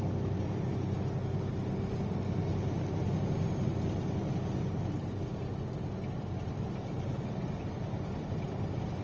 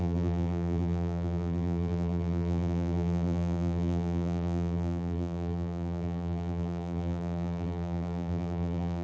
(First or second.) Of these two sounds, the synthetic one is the second